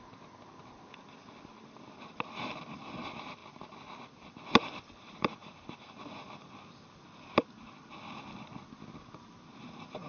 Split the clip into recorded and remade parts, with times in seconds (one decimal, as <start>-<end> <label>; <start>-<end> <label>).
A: 0.0-10.1 recorded